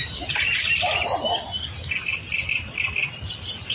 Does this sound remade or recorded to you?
recorded